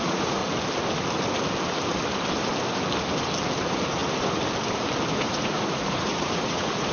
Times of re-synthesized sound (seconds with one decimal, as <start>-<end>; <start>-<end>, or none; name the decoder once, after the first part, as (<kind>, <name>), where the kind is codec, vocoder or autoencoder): 0.0-0.4 (vocoder, Vocos); 3.6-4.0; 5.1-6.9